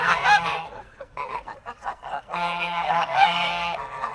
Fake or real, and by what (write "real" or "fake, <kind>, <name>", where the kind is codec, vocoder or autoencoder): fake, codec, SNAC